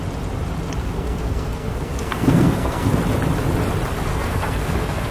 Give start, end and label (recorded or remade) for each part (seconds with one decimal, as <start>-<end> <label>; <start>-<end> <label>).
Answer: 0.0-0.8 recorded; 0.8-2.9 remade; 2.9-4.1 recorded; 4.1-5.1 remade